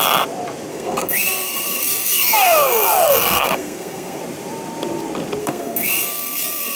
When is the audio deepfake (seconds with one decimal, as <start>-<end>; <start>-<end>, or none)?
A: 0.7-4.2; 5.4-6.8